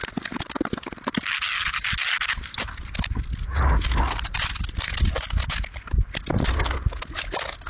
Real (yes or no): yes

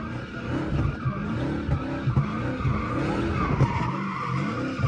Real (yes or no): yes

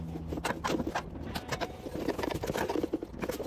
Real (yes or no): yes